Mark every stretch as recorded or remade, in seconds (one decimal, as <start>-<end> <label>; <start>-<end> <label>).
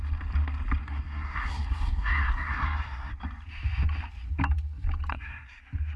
0.0-0.8 recorded; 0.8-3.1 remade; 3.1-5.1 recorded; 5.1-5.6 remade; 5.6-6.0 recorded